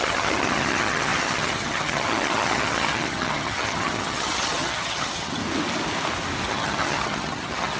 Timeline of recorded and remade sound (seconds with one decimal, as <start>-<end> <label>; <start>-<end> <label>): 0.0-5.4 remade; 5.4-6.5 recorded; 6.5-7.8 remade